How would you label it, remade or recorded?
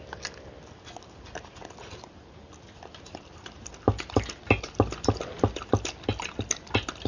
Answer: recorded